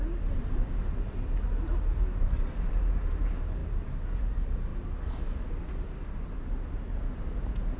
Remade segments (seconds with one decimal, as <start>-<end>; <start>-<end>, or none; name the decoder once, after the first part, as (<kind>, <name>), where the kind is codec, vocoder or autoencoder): none